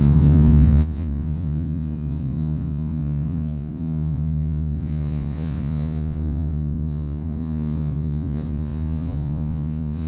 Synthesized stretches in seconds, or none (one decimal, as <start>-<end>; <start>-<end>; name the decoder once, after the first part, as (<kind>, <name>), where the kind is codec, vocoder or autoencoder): 0.0-10.1 (vocoder, Vocos)